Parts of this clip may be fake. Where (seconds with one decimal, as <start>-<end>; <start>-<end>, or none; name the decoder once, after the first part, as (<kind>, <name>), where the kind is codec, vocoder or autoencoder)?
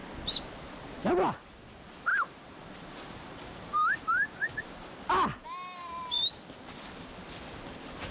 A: 2.1-4.9 (vocoder, BigVGAN v2)